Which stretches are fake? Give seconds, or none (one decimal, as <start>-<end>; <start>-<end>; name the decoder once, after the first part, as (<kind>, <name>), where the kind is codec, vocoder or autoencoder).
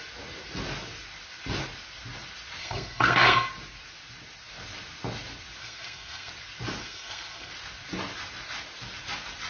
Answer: 2.6-3.5 (codec, SNAC); 5.6-6.3; 6.8-7.5